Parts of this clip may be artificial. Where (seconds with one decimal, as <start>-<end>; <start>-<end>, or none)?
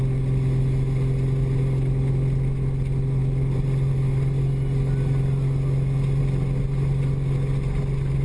none